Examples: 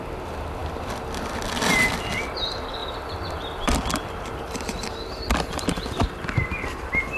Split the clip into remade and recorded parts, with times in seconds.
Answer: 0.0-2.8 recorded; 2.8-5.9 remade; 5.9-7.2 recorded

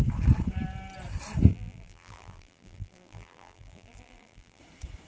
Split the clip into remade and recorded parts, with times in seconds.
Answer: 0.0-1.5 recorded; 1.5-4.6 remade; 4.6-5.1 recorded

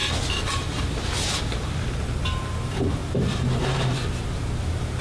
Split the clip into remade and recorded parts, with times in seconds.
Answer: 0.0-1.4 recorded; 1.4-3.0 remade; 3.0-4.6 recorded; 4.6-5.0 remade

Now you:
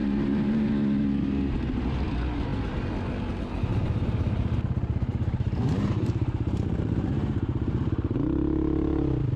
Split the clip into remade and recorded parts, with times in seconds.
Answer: 0.0-0.7 remade; 0.7-3.7 recorded; 3.7-7.9 remade; 7.9-9.4 recorded

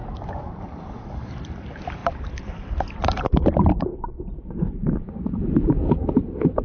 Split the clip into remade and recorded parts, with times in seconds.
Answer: 0.0-2.0 recorded; 2.0-5.4 remade; 5.4-6.6 recorded

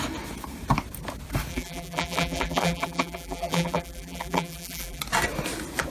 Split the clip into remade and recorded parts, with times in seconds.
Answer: 0.0-1.5 recorded; 1.5-5.0 remade; 5.0-5.9 recorded

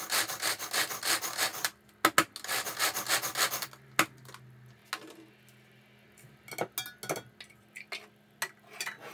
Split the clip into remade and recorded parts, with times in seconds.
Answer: 0.0-9.1 recorded

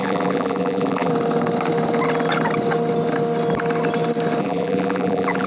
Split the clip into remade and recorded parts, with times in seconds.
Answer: 0.0-1.1 remade; 1.1-4.4 recorded; 4.4-5.5 remade